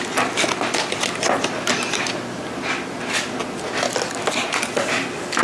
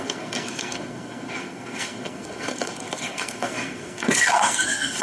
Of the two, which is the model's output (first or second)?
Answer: second